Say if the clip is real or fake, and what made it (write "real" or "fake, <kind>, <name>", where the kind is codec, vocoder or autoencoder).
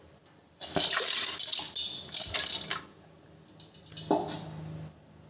real